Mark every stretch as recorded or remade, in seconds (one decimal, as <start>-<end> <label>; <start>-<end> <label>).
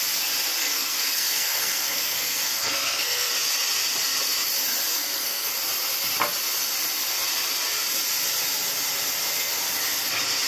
0.0-0.6 recorded; 0.6-3.3 remade; 3.3-4.9 recorded; 4.9-5.5 remade; 5.5-10.5 recorded